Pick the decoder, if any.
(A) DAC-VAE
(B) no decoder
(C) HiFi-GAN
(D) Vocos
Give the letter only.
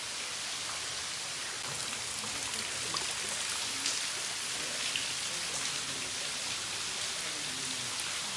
B